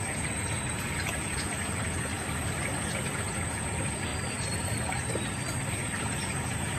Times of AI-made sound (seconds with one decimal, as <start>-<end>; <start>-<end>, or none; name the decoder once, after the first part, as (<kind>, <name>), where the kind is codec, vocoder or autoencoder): 0.0-2.1 (vocoder, Vocos); 2.8-4.1; 5.7-6.8